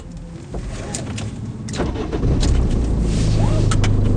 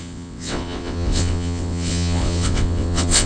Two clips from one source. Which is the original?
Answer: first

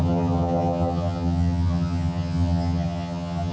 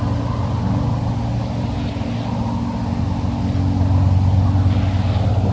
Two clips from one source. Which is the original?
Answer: second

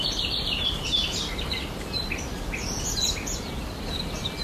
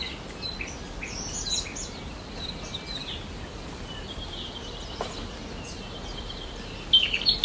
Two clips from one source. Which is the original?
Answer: second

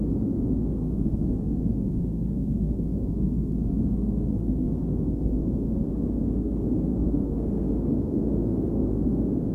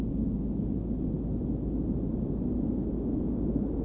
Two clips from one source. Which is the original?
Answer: second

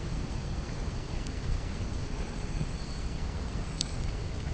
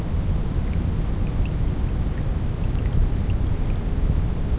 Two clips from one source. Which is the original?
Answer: second